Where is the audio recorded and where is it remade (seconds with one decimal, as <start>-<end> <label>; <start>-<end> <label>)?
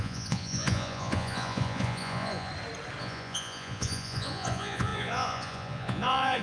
0.0-2.5 remade; 2.5-3.0 recorded; 3.0-6.4 remade